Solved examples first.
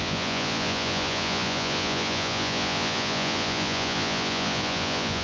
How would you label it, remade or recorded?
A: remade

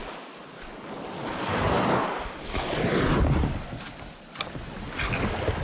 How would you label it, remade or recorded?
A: recorded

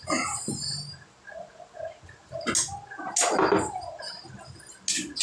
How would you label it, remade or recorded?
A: recorded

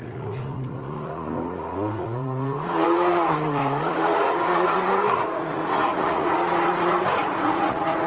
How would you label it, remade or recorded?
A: remade